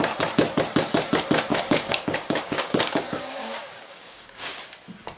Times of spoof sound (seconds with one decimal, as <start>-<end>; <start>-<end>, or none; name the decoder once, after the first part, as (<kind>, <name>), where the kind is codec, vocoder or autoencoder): 1.5-4.6 (codec, DAC)